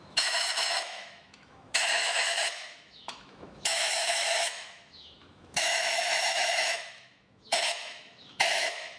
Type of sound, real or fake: fake